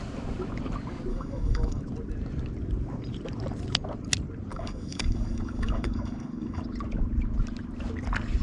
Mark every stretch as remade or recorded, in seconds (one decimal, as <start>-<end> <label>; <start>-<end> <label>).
0.0-1.1 recorded; 1.1-1.8 remade; 1.8-4.5 recorded; 4.5-6.6 remade; 6.6-8.4 recorded